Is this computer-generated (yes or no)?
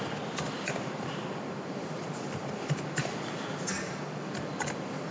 no